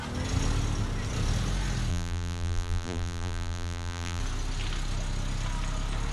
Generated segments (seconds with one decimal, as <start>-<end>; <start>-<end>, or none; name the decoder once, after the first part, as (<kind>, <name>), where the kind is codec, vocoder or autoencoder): 1.9-4.2 (vocoder, BigVGAN v2)